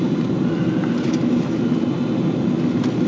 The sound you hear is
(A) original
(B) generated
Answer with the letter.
A